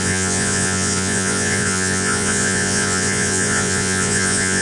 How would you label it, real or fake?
fake